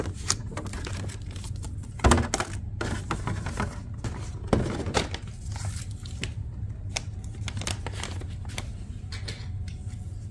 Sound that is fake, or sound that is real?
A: real